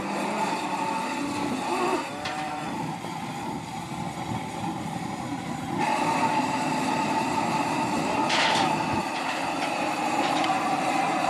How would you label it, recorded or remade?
remade